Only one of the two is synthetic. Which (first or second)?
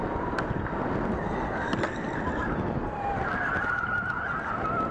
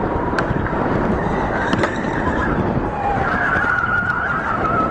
second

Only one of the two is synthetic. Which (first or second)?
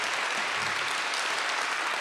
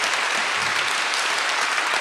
second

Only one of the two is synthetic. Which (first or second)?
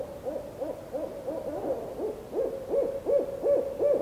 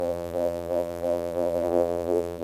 second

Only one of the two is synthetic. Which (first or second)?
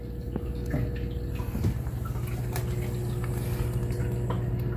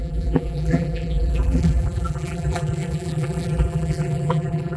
second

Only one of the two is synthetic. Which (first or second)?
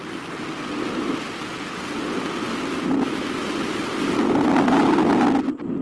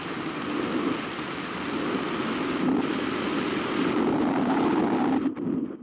second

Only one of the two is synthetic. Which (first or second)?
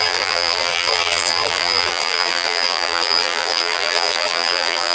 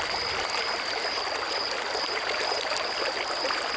first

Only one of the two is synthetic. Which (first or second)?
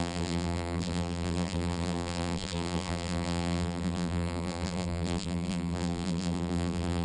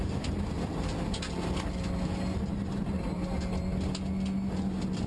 first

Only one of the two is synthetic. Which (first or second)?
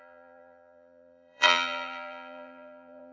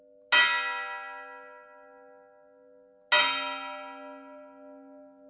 first